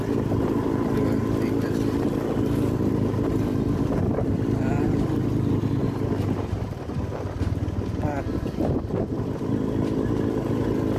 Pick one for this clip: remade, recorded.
recorded